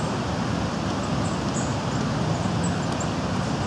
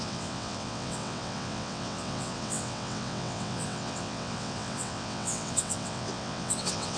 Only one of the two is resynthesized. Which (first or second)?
second